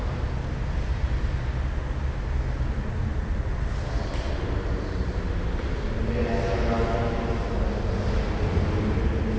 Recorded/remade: recorded